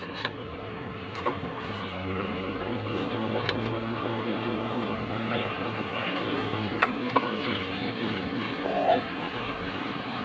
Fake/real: fake